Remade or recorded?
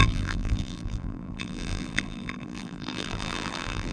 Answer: remade